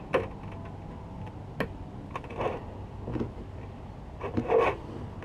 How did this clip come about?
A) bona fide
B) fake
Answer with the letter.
A